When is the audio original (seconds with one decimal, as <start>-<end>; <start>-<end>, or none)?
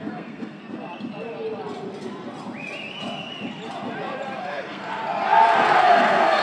0.6-4.4; 5.0-5.8